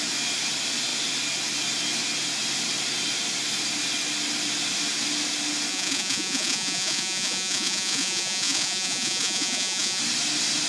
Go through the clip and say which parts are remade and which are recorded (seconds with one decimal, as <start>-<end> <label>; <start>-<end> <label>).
0.0-5.7 recorded; 5.7-10.0 remade; 10.0-10.7 recorded